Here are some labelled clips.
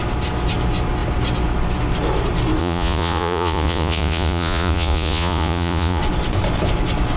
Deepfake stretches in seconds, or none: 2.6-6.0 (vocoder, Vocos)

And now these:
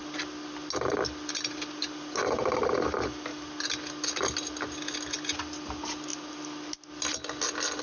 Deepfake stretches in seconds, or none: none

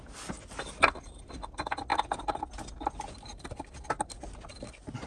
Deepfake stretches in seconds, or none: none